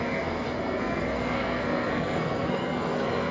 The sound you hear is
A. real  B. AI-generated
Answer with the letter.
B